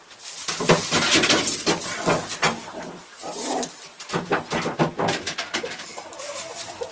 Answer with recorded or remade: recorded